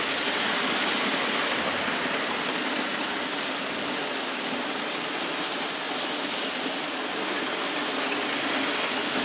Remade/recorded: recorded